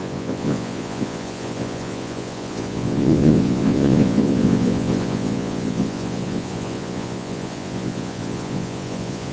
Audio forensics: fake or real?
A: fake